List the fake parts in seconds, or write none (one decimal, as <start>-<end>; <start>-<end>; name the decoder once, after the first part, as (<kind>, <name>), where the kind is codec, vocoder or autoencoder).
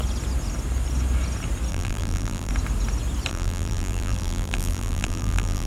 1.7-2.5 (vocoder, BigVGAN v2); 3.3-5.7